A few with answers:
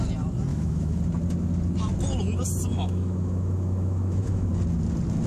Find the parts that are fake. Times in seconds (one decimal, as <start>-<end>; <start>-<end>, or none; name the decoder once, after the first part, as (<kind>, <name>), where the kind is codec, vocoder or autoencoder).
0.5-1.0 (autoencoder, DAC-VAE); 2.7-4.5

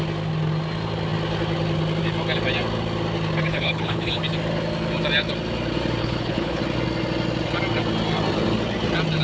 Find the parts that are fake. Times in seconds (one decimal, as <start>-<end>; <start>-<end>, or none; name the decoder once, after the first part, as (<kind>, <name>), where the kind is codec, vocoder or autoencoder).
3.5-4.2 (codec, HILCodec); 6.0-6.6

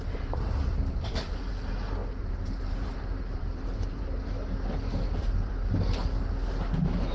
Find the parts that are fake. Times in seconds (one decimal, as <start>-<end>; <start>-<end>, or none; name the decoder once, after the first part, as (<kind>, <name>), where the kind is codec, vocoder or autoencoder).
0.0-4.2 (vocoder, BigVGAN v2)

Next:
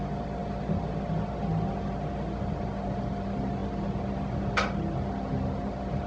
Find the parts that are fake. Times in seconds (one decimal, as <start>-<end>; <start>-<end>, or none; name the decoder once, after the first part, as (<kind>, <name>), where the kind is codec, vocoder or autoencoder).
none

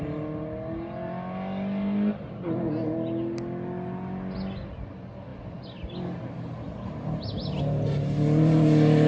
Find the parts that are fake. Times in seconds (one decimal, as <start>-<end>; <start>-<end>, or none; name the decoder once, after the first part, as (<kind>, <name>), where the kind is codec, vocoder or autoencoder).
none

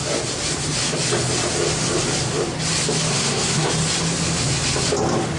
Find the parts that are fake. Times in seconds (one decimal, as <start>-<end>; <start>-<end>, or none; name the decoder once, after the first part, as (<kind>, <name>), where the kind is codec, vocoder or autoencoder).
3.1-3.7 (codec, SNAC)

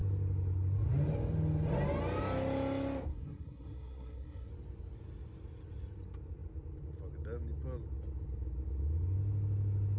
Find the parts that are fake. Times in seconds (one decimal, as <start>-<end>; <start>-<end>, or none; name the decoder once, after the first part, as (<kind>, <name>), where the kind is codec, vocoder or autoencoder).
3.1-4.5 (codec, SNAC)

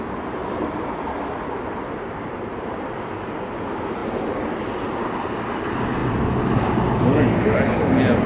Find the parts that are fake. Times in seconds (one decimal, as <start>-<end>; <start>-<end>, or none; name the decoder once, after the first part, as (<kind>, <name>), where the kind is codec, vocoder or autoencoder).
none